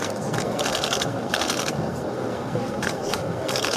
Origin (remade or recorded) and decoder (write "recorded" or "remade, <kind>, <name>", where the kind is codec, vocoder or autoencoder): remade, codec, SNAC